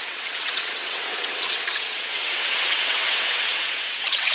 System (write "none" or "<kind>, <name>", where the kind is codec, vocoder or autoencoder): vocoder, WaveNeXt